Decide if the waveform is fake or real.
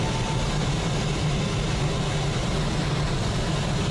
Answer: real